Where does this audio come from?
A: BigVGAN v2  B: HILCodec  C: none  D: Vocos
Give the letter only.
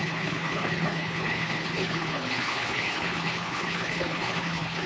B